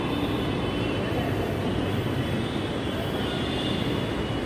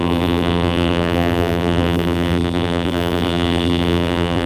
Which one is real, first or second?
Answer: first